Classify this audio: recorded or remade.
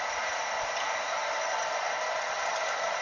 recorded